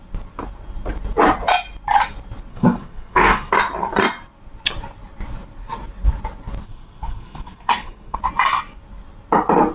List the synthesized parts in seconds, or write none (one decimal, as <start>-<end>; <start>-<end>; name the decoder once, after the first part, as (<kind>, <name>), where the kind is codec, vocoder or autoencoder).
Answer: 2.5-3.5 (codec, SNAC); 6.6-8.2